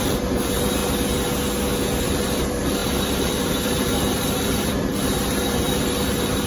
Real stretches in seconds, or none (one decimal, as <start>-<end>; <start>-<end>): 0.8-2.0